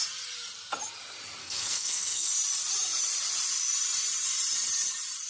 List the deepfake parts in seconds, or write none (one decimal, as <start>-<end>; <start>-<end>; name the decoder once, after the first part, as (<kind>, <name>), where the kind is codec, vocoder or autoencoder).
1.4-2.3 (codec, SNAC)